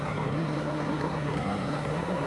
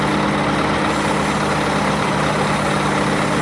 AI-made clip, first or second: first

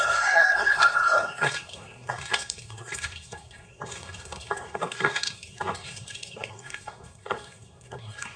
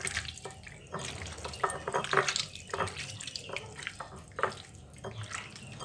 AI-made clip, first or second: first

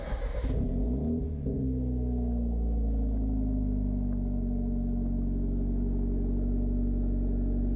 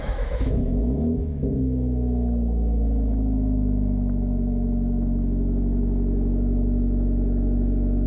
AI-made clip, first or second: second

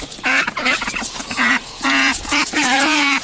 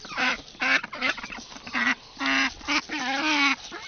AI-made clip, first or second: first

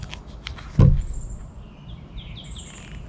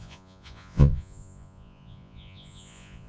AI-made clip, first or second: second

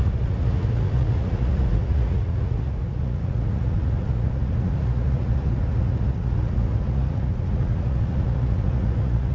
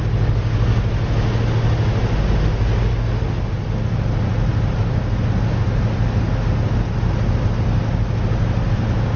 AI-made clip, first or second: first